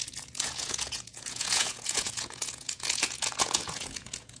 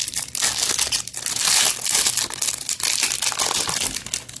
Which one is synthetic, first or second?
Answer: first